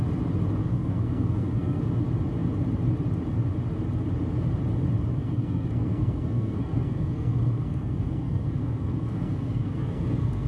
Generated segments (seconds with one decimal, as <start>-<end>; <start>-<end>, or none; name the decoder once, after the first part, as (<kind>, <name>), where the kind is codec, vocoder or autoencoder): 0.6-1.9 (codec, SNAC); 5.1-10.5